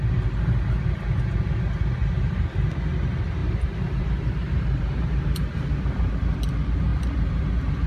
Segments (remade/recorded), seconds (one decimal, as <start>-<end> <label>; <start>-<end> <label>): 0.0-3.4 recorded; 3.4-6.1 remade; 6.1-6.9 recorded; 6.9-7.9 remade

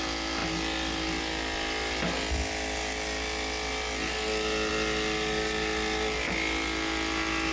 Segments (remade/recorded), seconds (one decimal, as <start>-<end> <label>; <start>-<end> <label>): 0.0-7.5 recorded

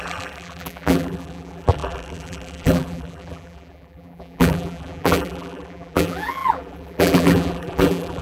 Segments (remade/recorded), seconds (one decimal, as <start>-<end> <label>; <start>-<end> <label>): 0.0-8.2 remade

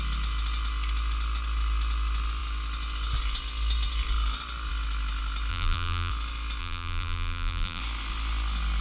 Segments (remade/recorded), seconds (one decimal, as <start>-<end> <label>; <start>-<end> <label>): 0.0-5.5 recorded; 5.5-6.1 remade; 6.1-6.6 recorded; 6.6-7.8 remade; 7.8-8.8 recorded